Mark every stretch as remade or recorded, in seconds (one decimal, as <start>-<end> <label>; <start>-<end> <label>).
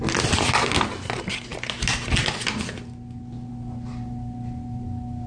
0.0-5.3 recorded